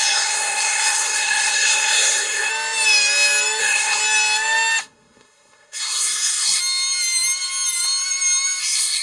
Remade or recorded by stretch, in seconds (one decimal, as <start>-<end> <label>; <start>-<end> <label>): 0.0-2.5 remade; 2.5-3.6 recorded; 3.6-4.0 remade; 4.0-4.8 recorded; 4.8-6.6 remade; 6.6-8.6 recorded; 8.6-9.0 remade